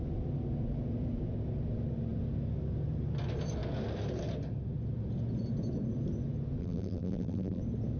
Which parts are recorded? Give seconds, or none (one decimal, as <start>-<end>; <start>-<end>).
0.0-6.6; 7.6-8.0